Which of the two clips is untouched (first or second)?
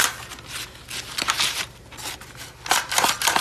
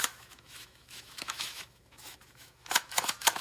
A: first